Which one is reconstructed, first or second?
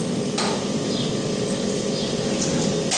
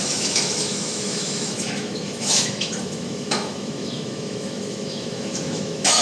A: second